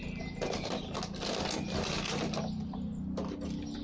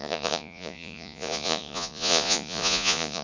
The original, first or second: first